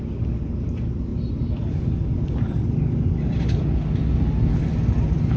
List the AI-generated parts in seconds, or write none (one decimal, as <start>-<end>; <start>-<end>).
1.1-3.8